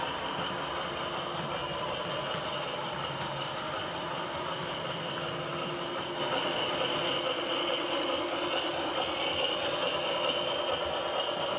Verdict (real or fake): real